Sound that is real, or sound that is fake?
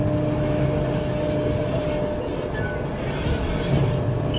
real